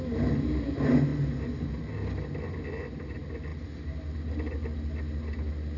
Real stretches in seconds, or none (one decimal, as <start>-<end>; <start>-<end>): 0.0-5.8